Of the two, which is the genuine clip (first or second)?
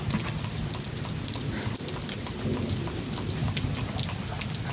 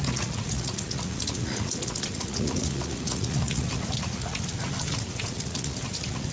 first